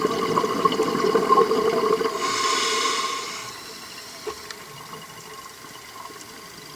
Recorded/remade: recorded